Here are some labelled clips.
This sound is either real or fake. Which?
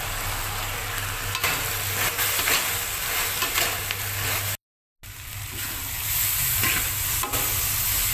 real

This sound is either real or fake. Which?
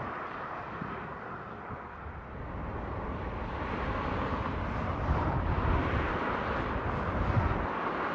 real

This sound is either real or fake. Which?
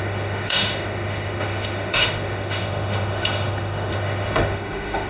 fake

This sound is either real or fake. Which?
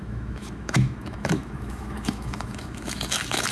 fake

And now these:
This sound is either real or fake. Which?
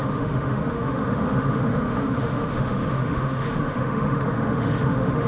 fake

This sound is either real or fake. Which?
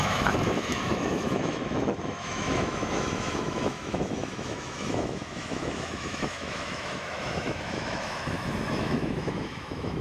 fake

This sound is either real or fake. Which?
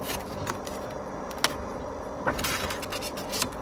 real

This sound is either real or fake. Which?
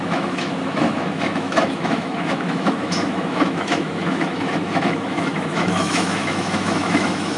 fake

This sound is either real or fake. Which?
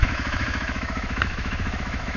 fake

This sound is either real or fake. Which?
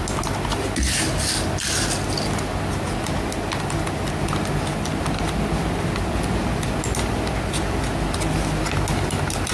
real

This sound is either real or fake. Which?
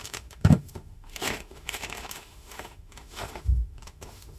fake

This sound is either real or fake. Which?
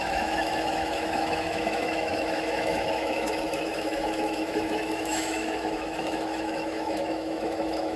fake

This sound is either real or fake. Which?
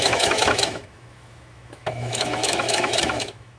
fake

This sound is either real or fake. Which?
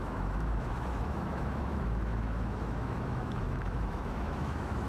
fake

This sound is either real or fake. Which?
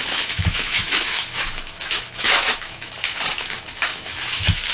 fake